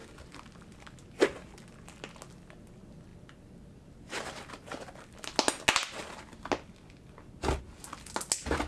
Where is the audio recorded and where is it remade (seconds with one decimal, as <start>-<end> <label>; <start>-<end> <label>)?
0.0-8.7 recorded